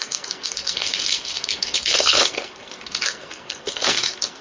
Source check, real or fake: fake